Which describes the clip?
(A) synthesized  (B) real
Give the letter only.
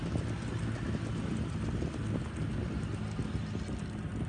B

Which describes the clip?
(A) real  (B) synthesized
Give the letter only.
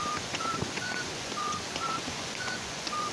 B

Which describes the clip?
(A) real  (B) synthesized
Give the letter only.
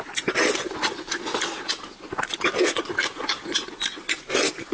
A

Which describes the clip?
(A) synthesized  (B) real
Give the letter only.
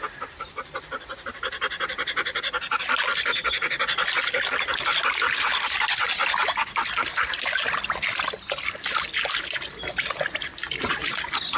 B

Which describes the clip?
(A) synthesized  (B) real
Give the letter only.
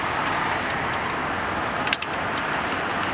B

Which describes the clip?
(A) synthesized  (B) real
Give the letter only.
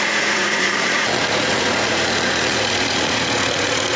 A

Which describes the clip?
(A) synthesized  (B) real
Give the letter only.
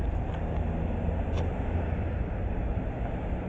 B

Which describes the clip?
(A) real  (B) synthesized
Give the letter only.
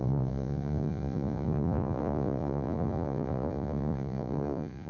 B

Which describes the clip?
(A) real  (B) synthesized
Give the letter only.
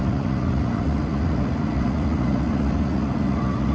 B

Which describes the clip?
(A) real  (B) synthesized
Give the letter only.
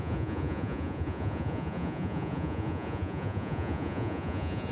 B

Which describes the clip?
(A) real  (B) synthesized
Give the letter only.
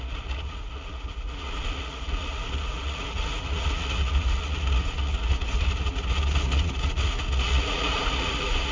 B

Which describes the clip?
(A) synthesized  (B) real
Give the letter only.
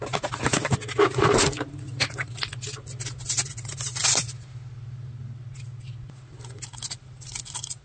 B